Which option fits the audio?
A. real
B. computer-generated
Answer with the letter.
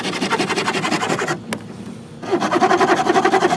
A